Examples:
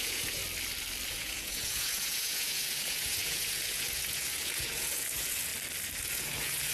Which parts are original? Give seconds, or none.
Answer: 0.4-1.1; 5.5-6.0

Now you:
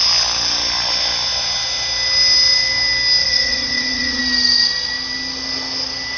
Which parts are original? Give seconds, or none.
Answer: 0.0-3.2; 4.2-6.2

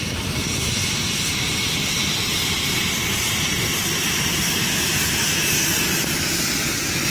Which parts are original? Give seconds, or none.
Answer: 0.0-0.8; 5.0-7.1

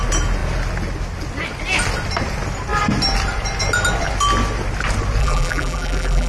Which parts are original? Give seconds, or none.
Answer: 0.0-5.2

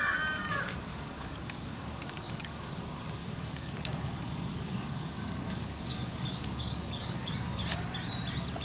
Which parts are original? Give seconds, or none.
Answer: 0.0-0.9; 2.7-3.2; 7.3-8.6

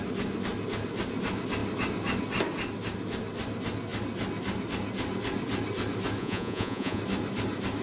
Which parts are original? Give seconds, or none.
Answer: 0.0-6.2; 7.0-7.8

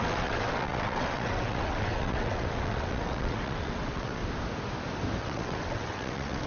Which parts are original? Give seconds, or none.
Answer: 4.2-5.2